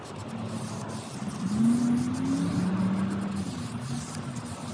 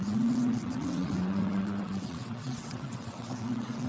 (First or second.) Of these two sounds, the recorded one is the first